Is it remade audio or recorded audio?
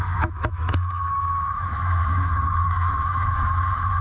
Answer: remade